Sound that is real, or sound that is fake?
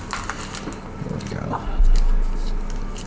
real